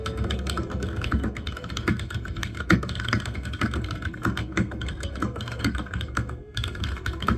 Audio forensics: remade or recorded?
remade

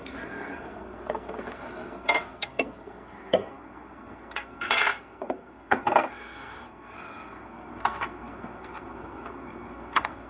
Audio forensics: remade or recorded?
remade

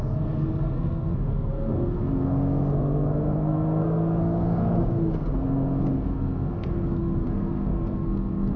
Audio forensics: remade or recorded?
remade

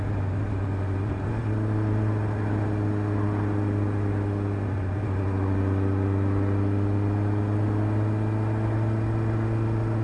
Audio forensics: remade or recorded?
recorded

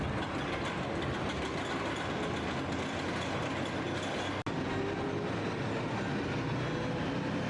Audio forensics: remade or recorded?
recorded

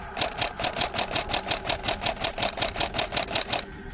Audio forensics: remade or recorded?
recorded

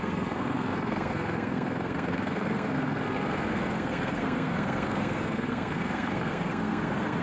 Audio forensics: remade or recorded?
remade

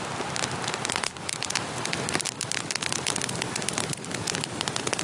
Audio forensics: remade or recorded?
recorded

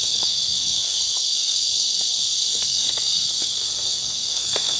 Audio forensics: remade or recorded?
remade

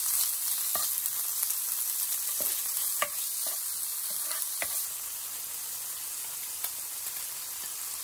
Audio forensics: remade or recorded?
recorded